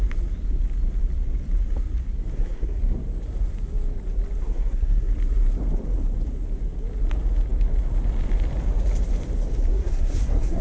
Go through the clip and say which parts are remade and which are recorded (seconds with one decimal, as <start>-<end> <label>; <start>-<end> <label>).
0.0-2.3 recorded; 2.3-2.8 remade; 2.8-4.4 recorded; 4.4-5.1 remade; 5.1-9.7 recorded; 9.7-10.6 remade